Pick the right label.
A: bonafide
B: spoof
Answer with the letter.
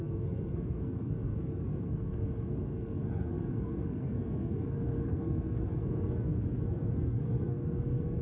B